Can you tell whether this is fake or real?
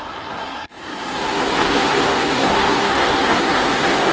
fake